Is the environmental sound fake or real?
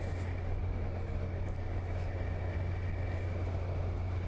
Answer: real